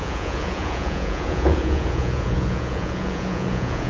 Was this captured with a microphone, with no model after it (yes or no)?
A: no